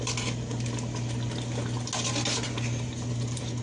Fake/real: real